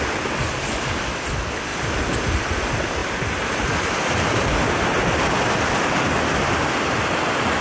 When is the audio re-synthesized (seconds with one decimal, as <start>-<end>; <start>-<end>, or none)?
none